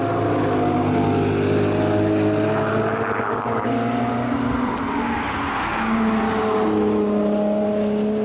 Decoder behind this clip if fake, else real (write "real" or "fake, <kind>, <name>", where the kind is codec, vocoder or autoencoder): real